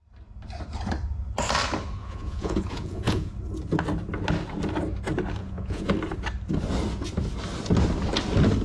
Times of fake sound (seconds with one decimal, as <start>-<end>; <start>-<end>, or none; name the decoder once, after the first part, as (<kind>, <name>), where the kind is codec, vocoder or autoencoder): 2.0-3.3 (vocoder, Vocos); 5.4-5.9